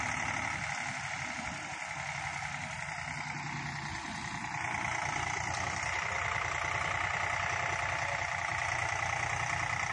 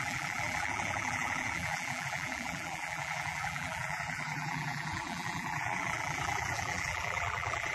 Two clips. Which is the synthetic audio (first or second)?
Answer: second